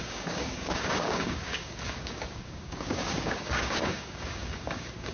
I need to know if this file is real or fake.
fake